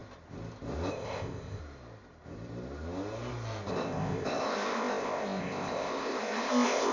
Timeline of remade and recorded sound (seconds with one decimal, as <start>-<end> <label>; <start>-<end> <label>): 0.0-0.9 recorded; 0.9-1.6 remade; 1.6-3.7 recorded; 3.7-6.9 remade